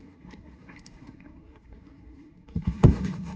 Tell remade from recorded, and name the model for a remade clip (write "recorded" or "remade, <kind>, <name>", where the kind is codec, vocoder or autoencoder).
remade, codec, SNAC